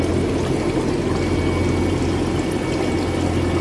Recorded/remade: recorded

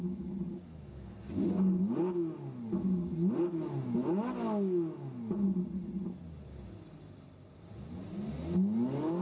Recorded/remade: recorded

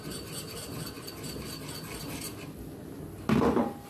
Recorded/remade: recorded